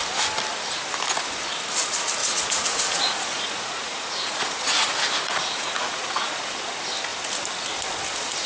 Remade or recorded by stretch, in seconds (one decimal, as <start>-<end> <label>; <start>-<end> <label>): 0.0-2.2 recorded; 2.2-6.6 remade; 6.6-8.5 recorded